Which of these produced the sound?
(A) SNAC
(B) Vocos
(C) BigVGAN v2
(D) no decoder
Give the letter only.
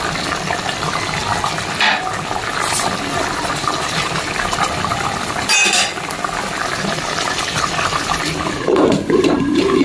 D